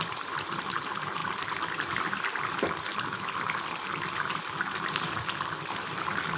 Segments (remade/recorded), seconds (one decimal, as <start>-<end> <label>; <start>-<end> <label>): 0.0-6.4 recorded